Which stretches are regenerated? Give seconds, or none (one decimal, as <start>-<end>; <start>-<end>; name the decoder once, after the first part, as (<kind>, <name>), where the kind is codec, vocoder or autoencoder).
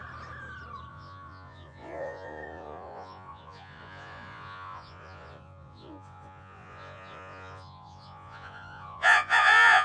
0.9-9.8 (vocoder, Vocos)